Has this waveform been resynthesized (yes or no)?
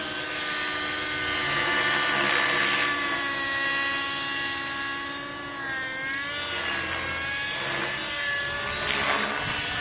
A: no